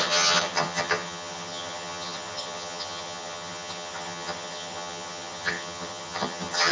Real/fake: fake